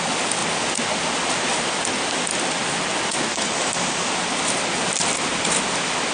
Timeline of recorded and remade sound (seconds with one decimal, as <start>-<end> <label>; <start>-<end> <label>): 0.0-3.3 recorded; 3.3-4.1 remade; 4.1-6.1 recorded